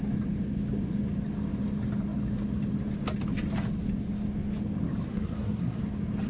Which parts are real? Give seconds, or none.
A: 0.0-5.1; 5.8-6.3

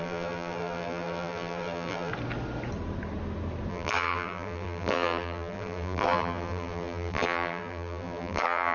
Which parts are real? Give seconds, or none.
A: 2.1-3.7

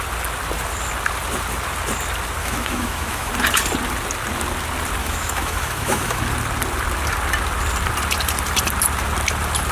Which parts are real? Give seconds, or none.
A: 0.0-2.4; 3.3-5.0; 6.2-9.7

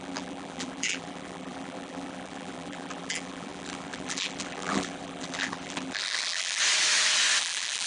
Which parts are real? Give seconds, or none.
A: 6.6-7.4